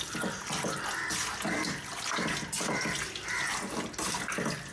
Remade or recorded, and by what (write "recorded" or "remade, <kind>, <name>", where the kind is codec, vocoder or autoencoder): recorded